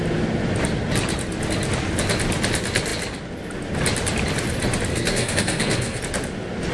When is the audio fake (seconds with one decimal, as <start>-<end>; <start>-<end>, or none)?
4.9-6.0